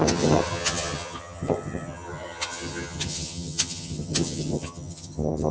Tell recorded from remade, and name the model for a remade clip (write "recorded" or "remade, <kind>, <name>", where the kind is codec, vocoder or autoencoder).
remade, vocoder, HiFi-GAN